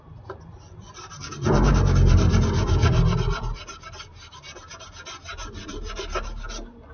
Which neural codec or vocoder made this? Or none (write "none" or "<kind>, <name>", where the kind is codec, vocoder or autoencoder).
vocoder, BigVGAN v2